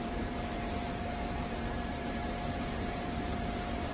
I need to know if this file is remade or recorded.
remade